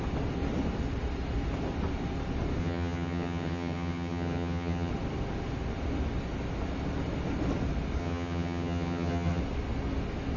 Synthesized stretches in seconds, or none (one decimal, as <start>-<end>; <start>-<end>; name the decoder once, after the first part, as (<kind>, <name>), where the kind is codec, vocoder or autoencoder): 2.6-4.9 (vocoder, HiFi-GAN); 8.0-9.4